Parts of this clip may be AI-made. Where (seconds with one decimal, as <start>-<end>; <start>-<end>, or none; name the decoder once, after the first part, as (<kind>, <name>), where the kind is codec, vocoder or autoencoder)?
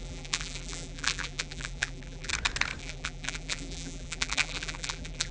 0.0-2.3 (vocoder, BigVGAN v2); 2.8-5.3